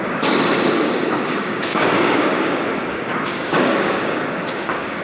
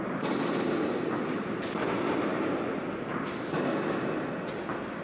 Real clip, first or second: second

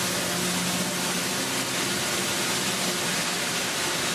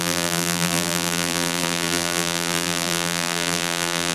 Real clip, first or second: first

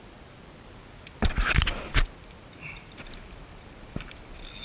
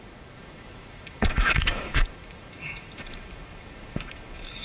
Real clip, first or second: first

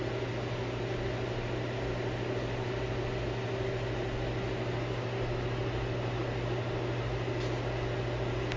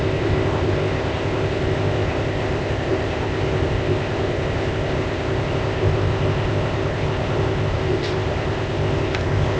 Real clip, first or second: first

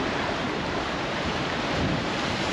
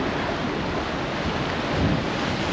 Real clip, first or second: second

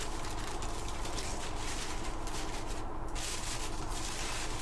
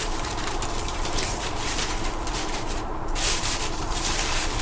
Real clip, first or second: first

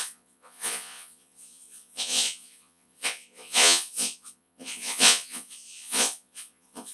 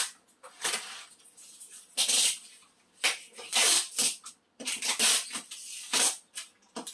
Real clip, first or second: second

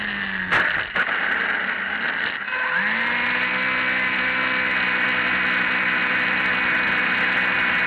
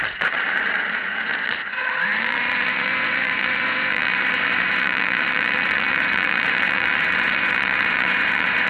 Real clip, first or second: first